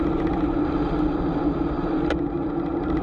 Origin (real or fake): real